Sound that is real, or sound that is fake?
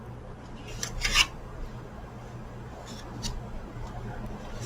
fake